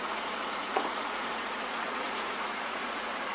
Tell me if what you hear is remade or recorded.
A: remade